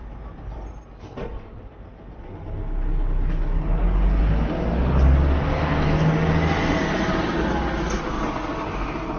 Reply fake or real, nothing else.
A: real